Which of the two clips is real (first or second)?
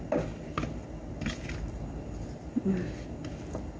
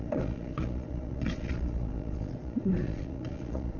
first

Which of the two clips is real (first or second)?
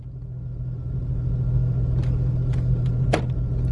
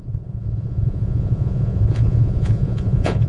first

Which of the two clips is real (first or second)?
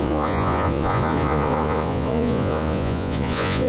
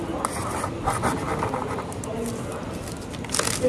second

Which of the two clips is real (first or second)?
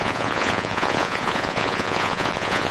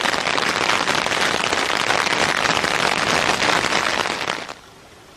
second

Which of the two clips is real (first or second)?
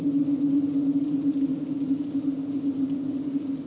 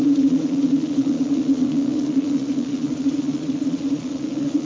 first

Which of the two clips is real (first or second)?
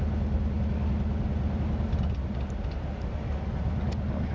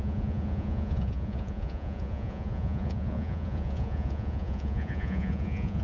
first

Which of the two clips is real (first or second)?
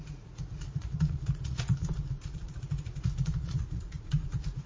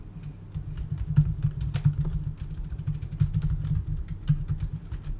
second